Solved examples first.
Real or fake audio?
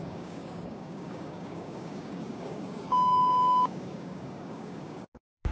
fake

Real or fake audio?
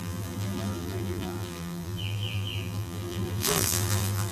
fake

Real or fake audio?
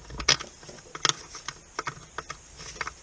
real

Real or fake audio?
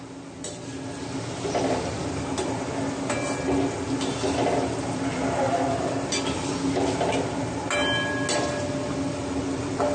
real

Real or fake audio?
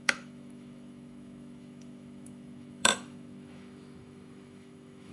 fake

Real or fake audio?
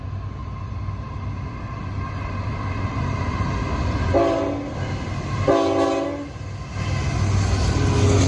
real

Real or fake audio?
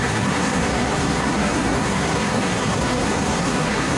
fake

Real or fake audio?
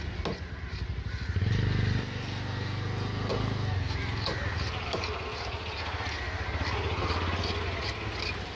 real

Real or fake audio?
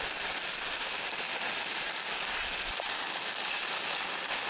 real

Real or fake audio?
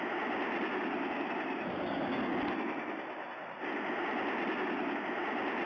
real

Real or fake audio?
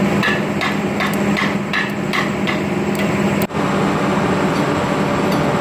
real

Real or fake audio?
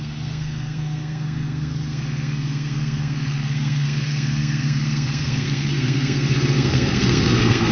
fake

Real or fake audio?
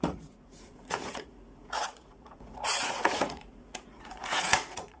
fake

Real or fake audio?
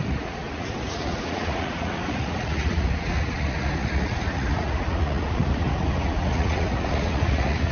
fake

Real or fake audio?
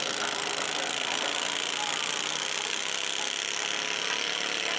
real